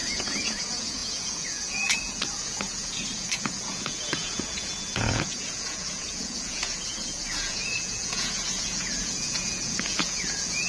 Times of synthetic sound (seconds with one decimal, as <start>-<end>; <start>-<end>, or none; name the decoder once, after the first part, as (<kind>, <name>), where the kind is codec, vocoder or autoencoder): 0.0-10.7 (vocoder, Vocos)